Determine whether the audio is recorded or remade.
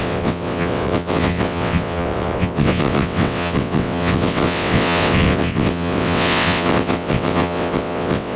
remade